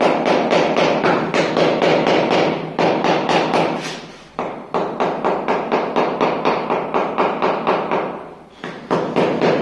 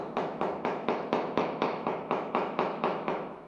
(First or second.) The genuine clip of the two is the first